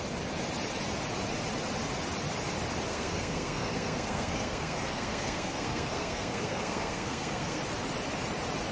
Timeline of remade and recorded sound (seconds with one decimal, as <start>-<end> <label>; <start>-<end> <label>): 0.0-2.9 recorded; 2.9-7.6 remade; 7.6-8.7 recorded